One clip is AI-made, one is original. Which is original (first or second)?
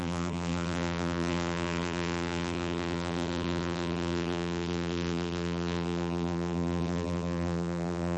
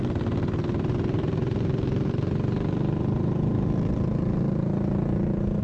second